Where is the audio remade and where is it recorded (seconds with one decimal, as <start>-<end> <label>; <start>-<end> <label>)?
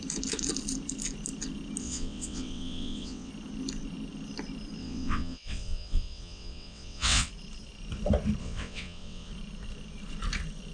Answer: 0.0-1.8 recorded; 1.8-3.3 remade; 3.3-4.8 recorded; 4.8-7.3 remade; 7.3-8.4 recorded; 8.4-9.3 remade; 9.3-10.7 recorded